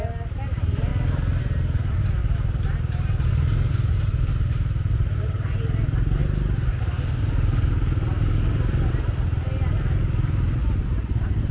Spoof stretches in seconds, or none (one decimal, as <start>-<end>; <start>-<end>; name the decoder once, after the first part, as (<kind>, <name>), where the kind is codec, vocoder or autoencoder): none